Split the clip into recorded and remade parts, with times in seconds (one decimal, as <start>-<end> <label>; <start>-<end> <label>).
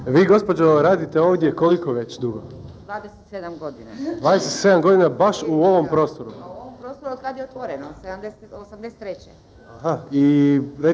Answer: 0.0-1.7 recorded; 1.7-4.6 remade; 4.6-8.6 recorded; 8.6-10.9 remade